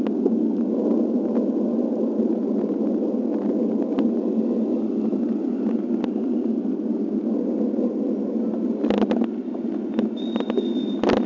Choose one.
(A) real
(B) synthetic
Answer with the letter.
A